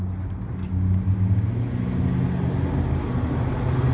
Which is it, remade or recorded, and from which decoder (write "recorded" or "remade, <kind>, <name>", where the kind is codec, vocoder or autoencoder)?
recorded